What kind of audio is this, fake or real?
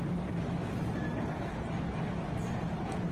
real